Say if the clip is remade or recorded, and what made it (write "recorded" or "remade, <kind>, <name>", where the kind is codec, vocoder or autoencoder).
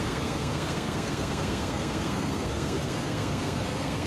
remade, codec, SNAC